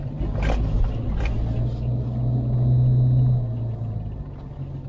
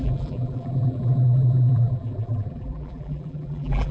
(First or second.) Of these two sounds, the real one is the first